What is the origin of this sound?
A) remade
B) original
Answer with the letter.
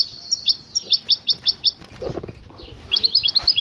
B